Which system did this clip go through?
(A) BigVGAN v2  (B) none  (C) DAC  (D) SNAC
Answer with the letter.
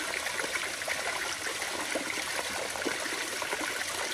B